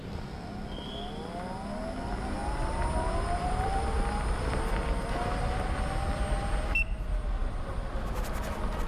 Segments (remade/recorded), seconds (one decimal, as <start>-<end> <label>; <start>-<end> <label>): 0.0-2.4 recorded; 2.4-4.4 remade; 4.4-8.9 recorded